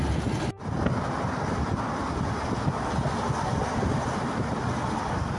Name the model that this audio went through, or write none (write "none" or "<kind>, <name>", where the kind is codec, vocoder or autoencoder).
none